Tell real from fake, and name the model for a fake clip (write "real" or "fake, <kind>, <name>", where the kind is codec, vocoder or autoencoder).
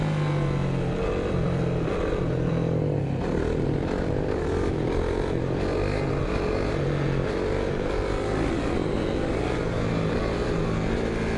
real